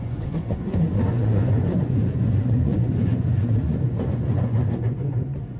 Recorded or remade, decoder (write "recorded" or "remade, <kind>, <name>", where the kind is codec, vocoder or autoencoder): remade, vocoder, Vocos